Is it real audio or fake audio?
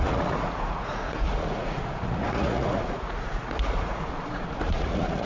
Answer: fake